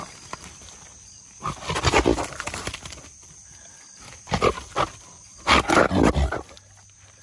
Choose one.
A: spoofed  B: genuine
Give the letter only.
B